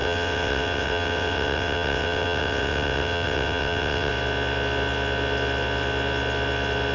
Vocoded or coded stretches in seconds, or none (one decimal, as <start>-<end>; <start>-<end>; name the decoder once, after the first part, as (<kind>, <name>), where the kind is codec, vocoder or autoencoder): 0.0-4.1 (vocoder, WaveNeXt)